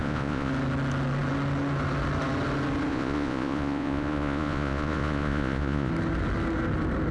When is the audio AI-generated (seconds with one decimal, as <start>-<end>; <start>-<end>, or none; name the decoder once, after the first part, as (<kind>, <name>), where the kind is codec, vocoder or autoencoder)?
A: 0.0-0.5 (vocoder, Vocos); 2.9-5.9